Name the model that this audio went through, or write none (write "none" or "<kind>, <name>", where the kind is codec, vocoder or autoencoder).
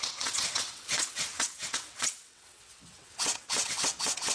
vocoder, WaveNeXt